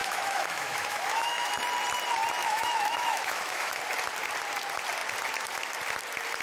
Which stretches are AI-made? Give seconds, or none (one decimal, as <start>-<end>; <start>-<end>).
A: 0.0-1.5; 2.4-3.8